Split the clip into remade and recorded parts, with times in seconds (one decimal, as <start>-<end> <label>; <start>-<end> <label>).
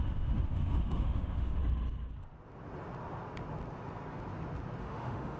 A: 0.0-1.6 remade; 1.6-4.8 recorded; 4.8-5.4 remade